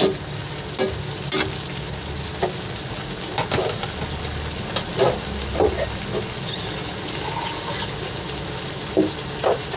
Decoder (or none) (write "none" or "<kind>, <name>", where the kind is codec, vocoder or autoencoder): none